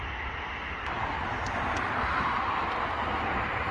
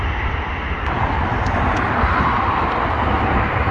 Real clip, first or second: first